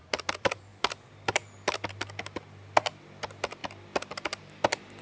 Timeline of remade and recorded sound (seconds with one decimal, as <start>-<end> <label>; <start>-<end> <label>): 0.0-5.0 recorded